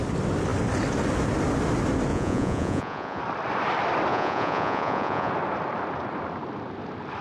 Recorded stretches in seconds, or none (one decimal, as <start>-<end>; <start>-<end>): 0.0-2.1; 3.2-4.1; 5.3-7.2